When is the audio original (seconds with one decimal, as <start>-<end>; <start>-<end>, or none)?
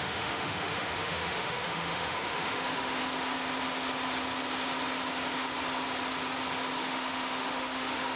3.0-6.8